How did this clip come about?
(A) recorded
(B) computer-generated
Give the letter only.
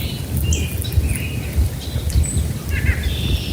A